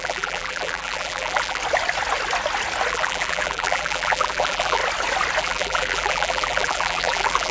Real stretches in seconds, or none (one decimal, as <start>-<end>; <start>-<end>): 1.6-2.9; 4.8-5.4